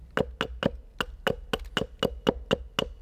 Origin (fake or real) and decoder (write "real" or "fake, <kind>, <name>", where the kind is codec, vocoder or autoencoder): real